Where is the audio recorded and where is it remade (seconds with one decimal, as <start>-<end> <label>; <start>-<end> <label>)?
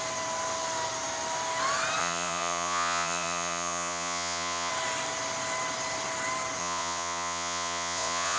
0.0-2.0 recorded; 2.0-4.7 remade; 4.7-6.6 recorded; 6.6-8.4 remade